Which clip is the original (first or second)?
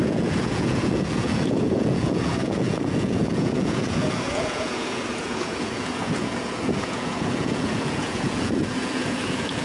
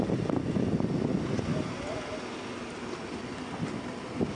second